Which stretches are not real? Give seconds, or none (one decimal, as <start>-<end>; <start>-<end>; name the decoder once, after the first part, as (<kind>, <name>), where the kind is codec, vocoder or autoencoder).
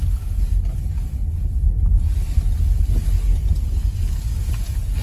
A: none